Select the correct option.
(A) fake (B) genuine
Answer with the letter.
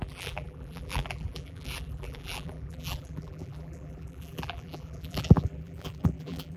A